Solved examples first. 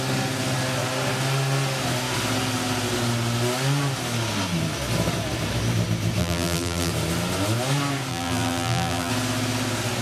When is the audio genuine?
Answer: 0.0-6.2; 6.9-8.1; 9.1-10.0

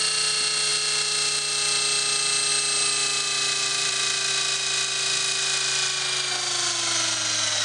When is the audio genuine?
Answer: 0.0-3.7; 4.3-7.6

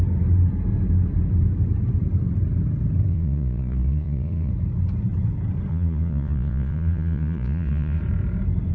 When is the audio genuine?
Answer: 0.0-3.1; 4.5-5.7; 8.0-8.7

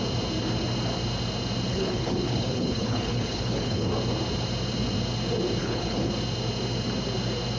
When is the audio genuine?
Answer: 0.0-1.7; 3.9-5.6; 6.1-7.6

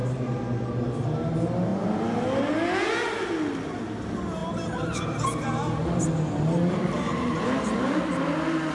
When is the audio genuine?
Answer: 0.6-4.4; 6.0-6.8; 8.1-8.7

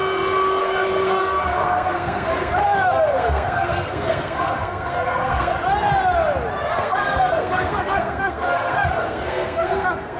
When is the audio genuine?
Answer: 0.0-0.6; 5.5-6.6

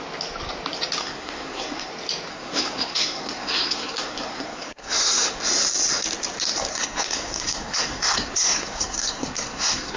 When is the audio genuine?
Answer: 0.0-1.0; 1.9-2.3; 5.4-6.7

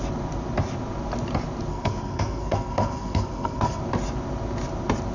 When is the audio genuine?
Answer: 0.0-1.7; 3.8-5.1